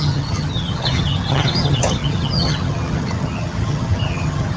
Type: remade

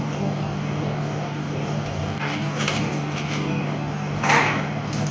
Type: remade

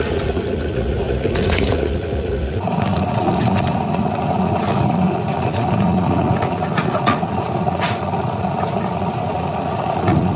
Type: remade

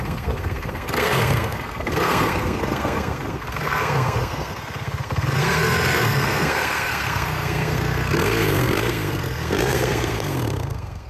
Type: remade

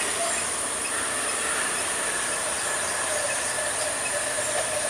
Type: recorded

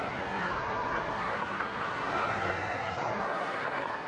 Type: remade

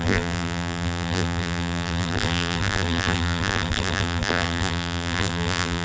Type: remade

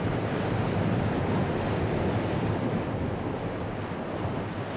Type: recorded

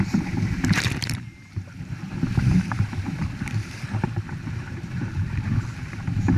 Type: remade